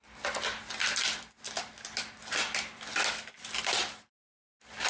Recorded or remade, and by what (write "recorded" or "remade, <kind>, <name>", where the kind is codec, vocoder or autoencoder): recorded